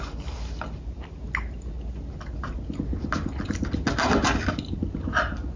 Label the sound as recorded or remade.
recorded